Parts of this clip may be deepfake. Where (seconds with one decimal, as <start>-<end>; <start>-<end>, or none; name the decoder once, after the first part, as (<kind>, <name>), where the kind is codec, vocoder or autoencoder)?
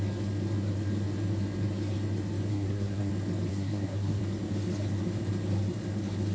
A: 2.5-3.1 (codec, SNAC); 3.5-4.2